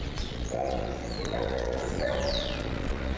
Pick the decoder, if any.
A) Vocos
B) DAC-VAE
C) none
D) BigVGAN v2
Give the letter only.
A